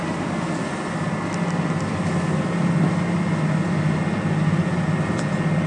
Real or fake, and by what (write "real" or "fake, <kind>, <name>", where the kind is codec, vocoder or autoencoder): real